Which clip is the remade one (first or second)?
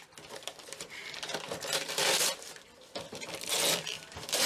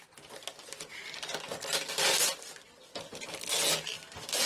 first